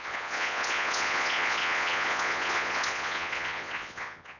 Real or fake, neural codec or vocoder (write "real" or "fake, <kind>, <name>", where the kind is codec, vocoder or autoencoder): fake, vocoder, Vocos